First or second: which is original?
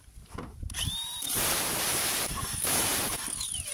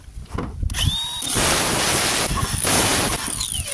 second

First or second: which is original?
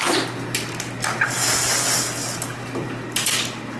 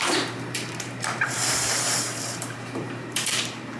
first